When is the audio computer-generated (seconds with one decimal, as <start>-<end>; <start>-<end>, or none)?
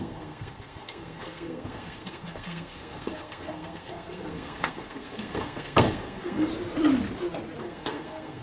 0.0-6.5; 7.6-8.4